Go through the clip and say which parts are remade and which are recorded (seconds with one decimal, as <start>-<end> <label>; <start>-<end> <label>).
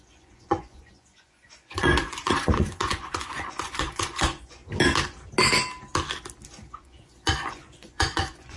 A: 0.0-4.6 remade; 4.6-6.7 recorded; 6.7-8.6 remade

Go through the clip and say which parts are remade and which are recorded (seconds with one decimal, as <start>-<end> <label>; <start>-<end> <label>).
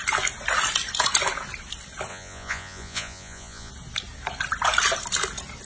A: 0.0-2.1 recorded; 2.1-3.7 remade; 3.7-5.7 recorded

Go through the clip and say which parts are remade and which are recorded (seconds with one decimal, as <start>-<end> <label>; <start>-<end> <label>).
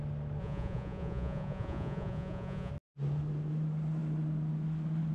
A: 0.0-0.4 recorded; 0.4-2.7 remade; 2.7-5.1 recorded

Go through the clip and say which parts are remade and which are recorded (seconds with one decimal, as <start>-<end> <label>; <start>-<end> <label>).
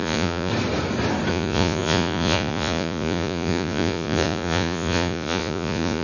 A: 0.0-0.5 remade; 0.5-1.3 recorded; 1.3-6.0 remade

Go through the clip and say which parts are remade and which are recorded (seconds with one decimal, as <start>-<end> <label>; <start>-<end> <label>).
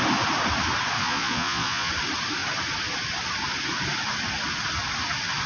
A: 0.0-1.0 recorded; 1.0-1.9 remade; 1.9-5.5 recorded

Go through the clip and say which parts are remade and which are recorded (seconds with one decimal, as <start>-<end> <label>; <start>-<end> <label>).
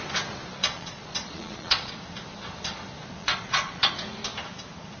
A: 0.0-0.6 recorded; 0.6-1.9 remade; 1.9-3.2 recorded; 3.2-3.9 remade; 3.9-5.0 recorded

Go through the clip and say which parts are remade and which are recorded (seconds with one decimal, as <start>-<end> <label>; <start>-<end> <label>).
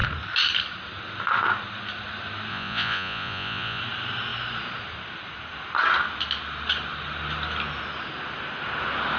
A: 0.0-2.5 recorded; 2.5-3.8 remade; 3.8-9.2 recorded